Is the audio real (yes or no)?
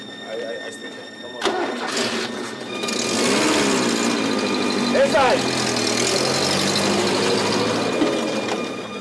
yes